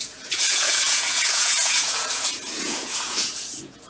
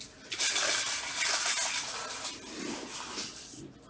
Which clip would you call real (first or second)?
second